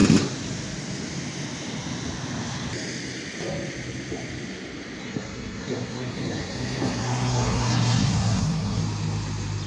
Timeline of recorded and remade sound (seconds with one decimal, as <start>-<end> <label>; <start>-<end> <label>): 0.0-5.0 recorded; 5.0-8.8 remade; 8.8-9.7 recorded